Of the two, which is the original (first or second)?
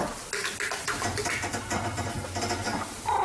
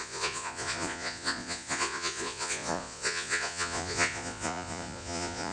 first